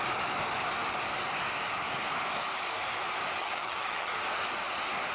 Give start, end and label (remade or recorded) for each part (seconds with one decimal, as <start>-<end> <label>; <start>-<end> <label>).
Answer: 0.0-3.4 recorded; 3.4-4.1 remade; 4.1-5.1 recorded